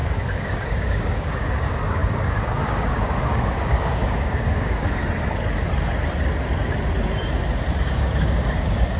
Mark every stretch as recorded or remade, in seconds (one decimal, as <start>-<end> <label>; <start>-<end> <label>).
0.0-5.0 remade; 5.0-7.8 recorded; 7.8-9.0 remade